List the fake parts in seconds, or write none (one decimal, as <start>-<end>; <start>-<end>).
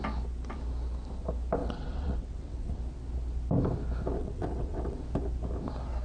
1.6-2.8; 4.2-5.0